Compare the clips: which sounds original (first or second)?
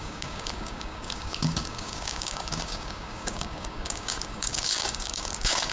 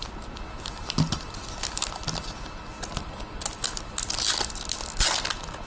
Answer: second